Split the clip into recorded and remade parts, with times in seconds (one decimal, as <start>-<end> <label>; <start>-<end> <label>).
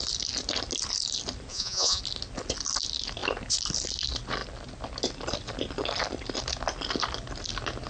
0.0-1.5 recorded; 1.5-2.0 remade; 2.0-7.9 recorded